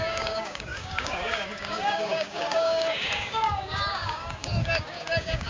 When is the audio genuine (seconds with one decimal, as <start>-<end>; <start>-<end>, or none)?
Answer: none